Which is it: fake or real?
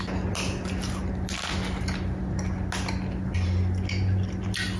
real